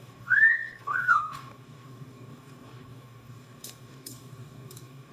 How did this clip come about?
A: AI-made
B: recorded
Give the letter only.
A